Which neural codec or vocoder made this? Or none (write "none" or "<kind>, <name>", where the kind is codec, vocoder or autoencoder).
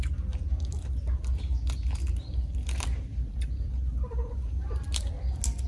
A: none